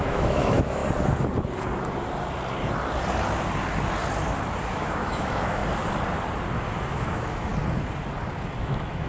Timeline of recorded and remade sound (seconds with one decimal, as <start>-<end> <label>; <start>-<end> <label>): 0.0-0.8 remade; 0.8-4.7 recorded; 4.7-5.6 remade; 5.6-6.9 recorded; 6.9-7.5 remade; 7.5-8.6 recorded; 8.6-9.1 remade